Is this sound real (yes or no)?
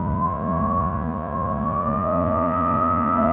no